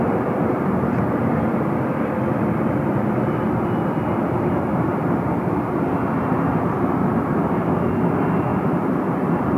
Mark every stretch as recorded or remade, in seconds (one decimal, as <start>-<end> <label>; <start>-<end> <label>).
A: 0.0-4.0 remade; 4.0-7.9 recorded; 7.9-8.5 remade; 8.5-9.6 recorded